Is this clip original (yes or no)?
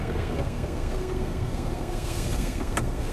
no